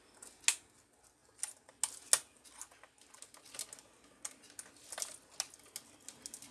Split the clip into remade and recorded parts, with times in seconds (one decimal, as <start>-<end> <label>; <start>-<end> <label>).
0.0-6.5 recorded